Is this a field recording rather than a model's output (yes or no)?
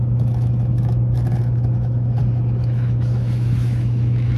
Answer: no